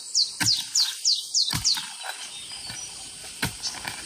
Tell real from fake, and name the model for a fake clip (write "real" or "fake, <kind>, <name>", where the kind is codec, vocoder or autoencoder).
real